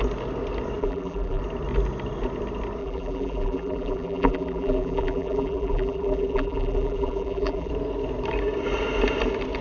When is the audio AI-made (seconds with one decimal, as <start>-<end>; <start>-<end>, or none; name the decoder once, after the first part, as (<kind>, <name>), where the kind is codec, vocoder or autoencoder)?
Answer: 0.8-1.4 (vocoder, BigVGAN v2); 2.8-7.7